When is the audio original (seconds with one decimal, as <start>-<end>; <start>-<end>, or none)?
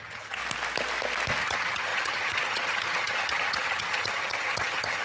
0.4-1.4